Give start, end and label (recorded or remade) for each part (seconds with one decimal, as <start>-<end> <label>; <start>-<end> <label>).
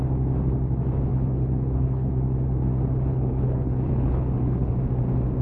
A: 0.0-1.1 recorded; 1.1-2.1 remade; 2.1-3.1 recorded; 3.1-4.7 remade; 4.7-5.4 recorded